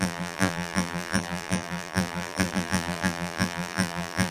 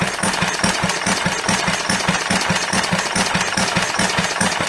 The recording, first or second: second